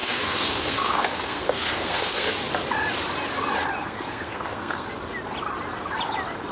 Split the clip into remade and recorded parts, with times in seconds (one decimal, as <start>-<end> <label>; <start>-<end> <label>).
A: 0.0-2.3 remade; 2.3-3.8 recorded; 3.8-4.9 remade; 4.9-6.5 recorded